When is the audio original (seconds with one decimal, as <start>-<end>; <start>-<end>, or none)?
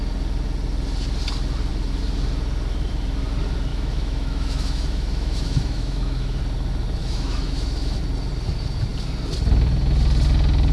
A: 0.0-3.7; 6.4-7.0; 8.0-10.7